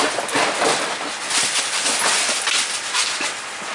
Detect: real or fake real